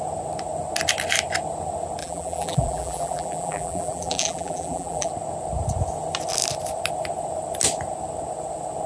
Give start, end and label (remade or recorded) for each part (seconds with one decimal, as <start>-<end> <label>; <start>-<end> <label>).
0.0-2.0 recorded; 2.0-5.1 remade; 5.1-8.9 recorded